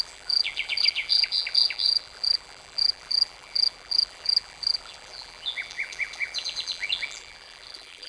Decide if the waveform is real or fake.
fake